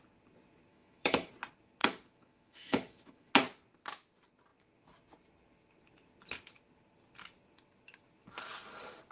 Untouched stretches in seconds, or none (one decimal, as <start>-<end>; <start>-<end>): 0.0-0.7; 1.3-1.8; 3.3-9.1